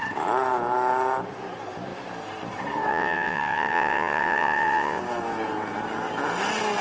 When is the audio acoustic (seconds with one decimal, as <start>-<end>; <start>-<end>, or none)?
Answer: 0.0-2.9; 5.0-6.8